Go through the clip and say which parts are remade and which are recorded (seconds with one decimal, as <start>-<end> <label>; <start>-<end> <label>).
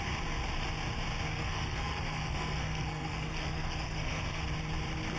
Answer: 0.0-1.3 recorded; 1.3-4.4 remade; 4.4-5.2 recorded